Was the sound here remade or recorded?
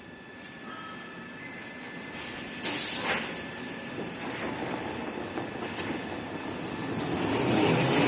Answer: recorded